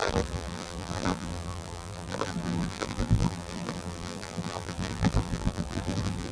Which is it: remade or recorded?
remade